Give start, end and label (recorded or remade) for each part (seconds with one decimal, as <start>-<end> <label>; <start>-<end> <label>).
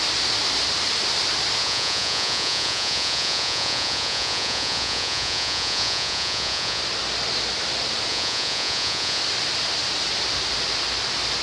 0.0-1.6 recorded; 1.6-6.8 remade; 6.8-8.1 recorded; 8.1-9.2 remade; 9.2-11.4 recorded